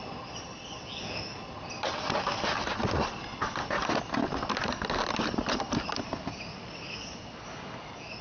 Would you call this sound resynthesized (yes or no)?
no